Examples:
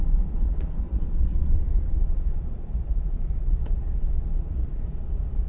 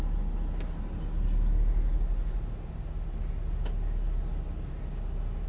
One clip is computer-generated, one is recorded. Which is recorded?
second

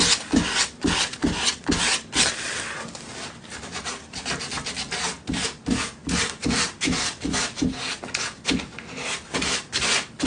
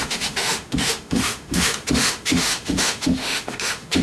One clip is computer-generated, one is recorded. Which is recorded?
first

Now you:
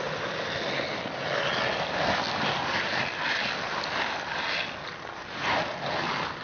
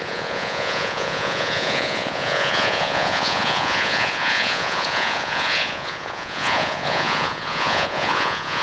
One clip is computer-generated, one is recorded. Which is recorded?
first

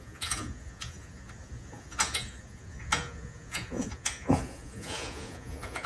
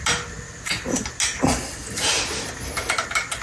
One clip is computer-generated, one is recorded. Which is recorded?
second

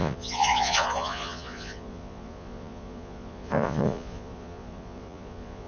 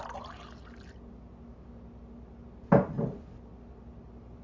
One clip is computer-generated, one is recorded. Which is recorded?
second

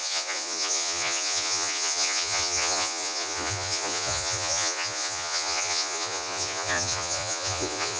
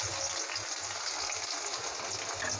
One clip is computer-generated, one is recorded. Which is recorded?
second